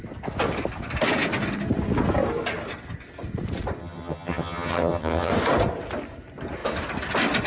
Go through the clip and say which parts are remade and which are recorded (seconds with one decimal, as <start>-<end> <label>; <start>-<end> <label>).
0.0-3.8 recorded; 3.8-5.3 remade; 5.3-7.5 recorded